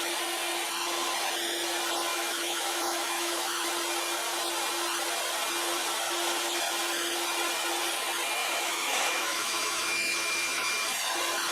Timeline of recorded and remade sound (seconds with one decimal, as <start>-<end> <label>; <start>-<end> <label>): 0.0-2.1 recorded; 2.1-3.7 remade; 3.7-8.4 recorded; 8.4-10.7 remade; 10.7-11.5 recorded